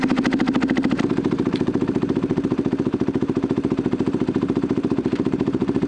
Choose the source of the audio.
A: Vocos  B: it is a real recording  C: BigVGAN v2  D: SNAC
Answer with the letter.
C